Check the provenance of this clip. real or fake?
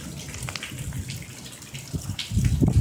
real